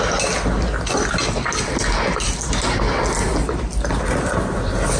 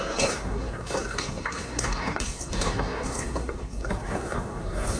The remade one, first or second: second